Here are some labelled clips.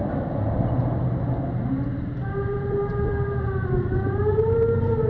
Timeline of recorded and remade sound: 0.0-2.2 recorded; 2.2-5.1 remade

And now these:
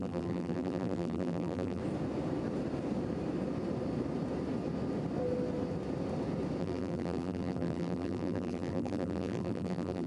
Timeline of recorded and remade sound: 0.0-1.8 remade; 1.8-6.6 recorded; 6.6-10.1 remade

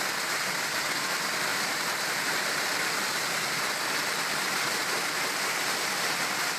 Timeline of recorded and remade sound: 0.0-1.5 recorded; 1.5-3.3 remade; 3.3-6.6 recorded

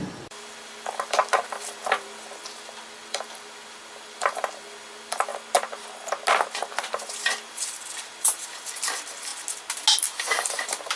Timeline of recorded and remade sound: 0.0-5.3 remade; 5.3-7.0 recorded; 7.0-9.3 remade; 9.3-10.0 recorded; 10.0-11.0 remade

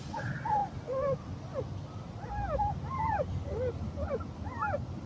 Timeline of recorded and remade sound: 0.0-0.6 remade; 0.6-3.7 recorded; 3.7-5.1 remade

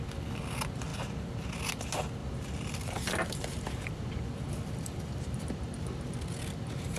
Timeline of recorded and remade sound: 0.0-2.2 recorded; 2.2-6.4 remade; 6.4-7.0 recorded

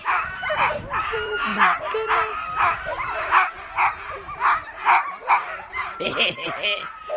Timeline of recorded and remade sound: 0.0-1.5 remade; 1.5-5.3 recorded; 5.3-7.2 remade

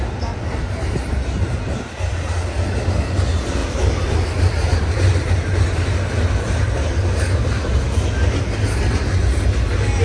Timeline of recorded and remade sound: 0.0-3.6 recorded; 3.6-5.3 remade; 5.3-10.0 recorded